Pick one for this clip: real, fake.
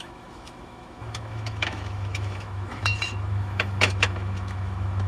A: fake